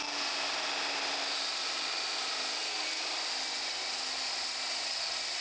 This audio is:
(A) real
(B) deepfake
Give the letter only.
A